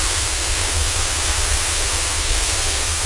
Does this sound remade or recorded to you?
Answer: remade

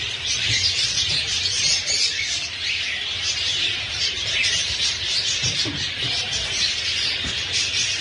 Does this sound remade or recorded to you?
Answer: remade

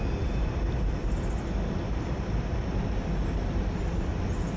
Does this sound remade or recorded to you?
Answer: recorded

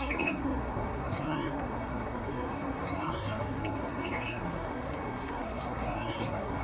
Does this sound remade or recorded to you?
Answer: remade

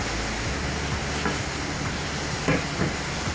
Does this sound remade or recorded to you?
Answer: recorded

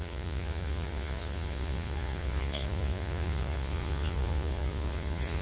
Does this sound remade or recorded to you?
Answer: remade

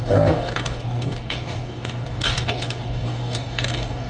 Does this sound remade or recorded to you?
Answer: remade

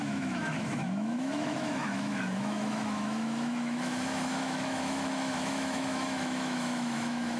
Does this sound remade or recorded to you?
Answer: remade